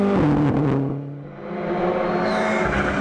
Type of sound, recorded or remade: recorded